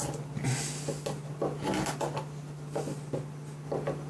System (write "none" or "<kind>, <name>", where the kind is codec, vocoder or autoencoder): none